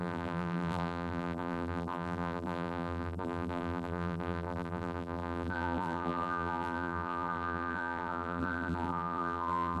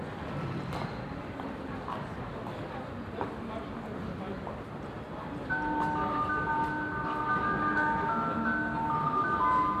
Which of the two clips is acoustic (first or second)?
second